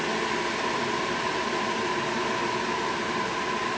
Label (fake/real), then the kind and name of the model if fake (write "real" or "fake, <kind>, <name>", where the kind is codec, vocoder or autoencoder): real